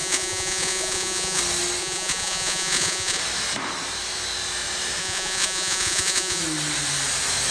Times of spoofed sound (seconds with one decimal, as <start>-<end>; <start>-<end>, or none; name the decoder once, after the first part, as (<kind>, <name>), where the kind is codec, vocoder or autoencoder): 0.0-1.4 (vocoder, Vocos); 1.8-3.2; 5.0-6.4